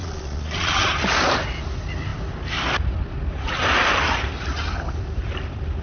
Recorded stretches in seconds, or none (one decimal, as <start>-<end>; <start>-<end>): 0.8-5.8